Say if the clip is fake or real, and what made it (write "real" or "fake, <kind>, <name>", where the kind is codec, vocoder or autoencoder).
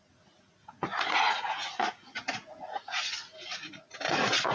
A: fake, vocoder, Vocos